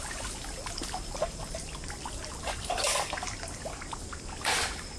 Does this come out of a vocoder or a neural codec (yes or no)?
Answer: no